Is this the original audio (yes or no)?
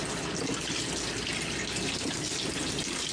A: yes